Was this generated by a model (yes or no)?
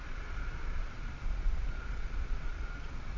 yes